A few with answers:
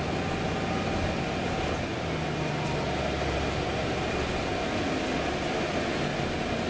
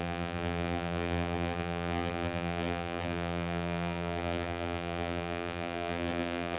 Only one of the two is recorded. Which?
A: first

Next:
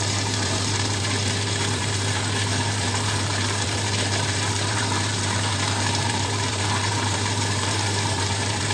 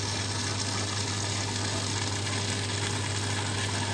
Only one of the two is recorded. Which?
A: second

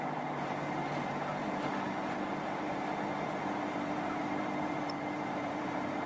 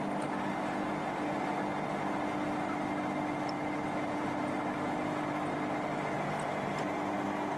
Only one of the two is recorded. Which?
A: second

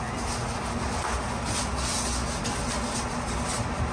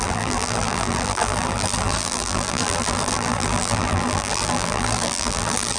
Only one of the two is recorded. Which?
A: first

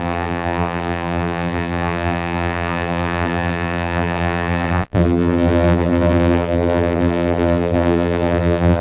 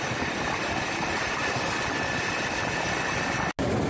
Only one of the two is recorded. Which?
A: second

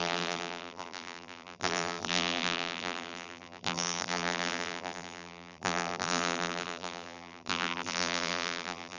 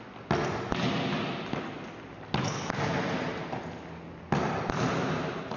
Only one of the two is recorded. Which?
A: second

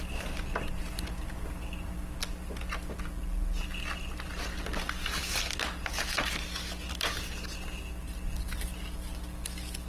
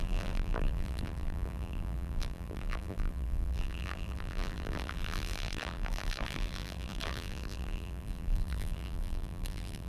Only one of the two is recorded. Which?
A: first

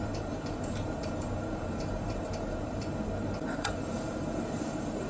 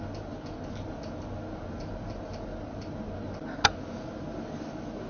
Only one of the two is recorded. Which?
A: second